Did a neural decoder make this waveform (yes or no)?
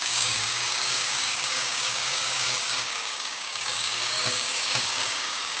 yes